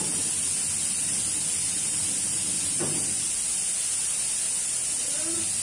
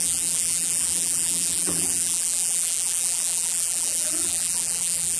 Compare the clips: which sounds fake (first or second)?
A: second